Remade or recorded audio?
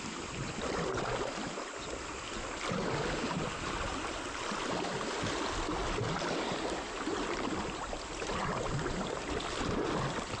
recorded